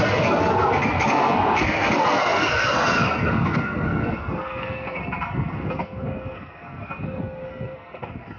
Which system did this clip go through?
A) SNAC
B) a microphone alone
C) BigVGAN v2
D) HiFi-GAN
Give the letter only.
A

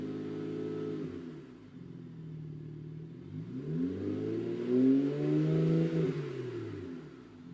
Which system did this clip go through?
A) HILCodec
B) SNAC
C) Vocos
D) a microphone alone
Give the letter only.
D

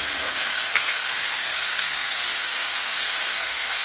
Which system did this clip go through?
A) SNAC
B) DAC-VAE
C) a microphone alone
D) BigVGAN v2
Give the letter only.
A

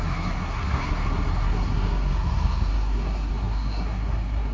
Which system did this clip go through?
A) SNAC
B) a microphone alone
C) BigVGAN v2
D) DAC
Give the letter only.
A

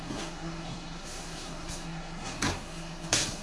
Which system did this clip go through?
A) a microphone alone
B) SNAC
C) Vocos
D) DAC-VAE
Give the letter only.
B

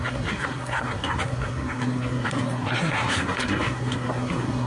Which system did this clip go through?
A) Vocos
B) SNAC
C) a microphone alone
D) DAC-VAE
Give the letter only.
B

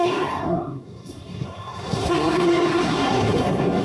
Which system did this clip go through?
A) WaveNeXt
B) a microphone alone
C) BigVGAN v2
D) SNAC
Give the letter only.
D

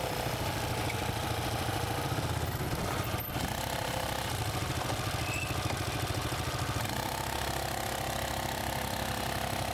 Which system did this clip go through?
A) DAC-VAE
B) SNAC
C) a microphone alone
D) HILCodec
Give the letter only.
C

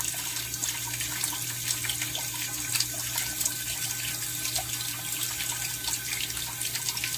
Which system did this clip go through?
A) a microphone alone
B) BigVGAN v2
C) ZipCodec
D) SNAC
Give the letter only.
A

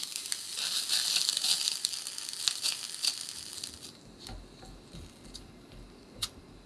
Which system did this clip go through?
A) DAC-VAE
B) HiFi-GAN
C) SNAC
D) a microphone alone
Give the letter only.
D